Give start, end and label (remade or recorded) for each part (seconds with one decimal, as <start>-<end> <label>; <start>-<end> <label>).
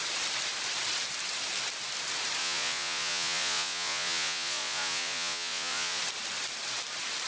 0.0-2.4 recorded; 2.4-6.0 remade; 6.0-7.3 recorded